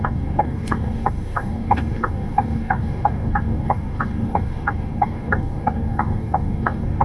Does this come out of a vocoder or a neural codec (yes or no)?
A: yes